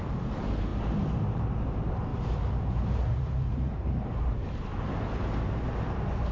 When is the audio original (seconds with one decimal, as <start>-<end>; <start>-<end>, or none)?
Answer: 4.7-5.8

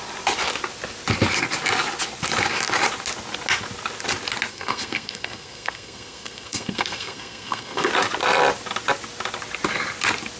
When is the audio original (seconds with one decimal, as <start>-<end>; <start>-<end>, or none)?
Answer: 0.0-4.5; 7.9-10.4

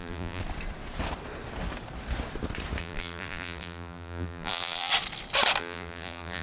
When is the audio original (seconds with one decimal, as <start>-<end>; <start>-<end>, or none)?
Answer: 0.4-2.8; 4.9-5.6

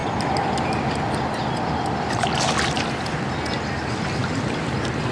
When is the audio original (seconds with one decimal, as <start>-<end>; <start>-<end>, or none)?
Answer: 0.0-5.1

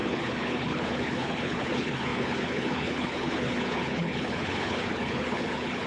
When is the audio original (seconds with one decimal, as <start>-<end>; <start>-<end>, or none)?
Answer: none

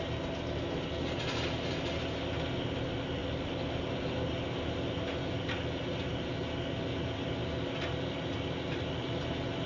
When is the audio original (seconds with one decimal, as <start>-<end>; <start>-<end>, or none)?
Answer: 0.0-9.7